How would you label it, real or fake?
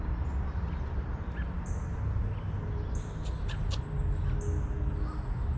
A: real